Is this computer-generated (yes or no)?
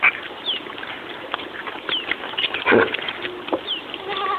no